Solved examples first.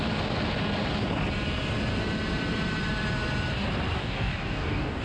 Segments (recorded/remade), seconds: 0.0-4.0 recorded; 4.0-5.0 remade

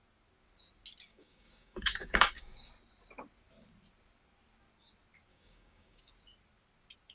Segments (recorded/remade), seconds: 0.0-1.1 recorded; 1.1-2.7 remade; 2.7-5.3 recorded; 5.3-6.0 remade; 6.0-7.1 recorded

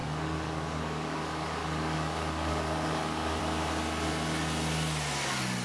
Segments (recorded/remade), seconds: 0.0-3.4 remade; 3.4-5.6 recorded

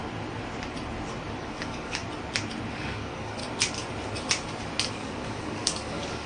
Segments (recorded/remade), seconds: 0.0-1.4 recorded; 1.4-2.0 remade; 2.0-2.7 recorded; 2.7-3.4 remade; 3.4-4.9 recorded; 4.9-6.3 remade